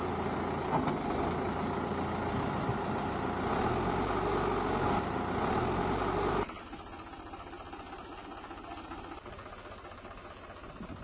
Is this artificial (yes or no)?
no